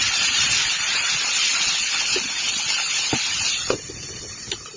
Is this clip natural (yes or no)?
yes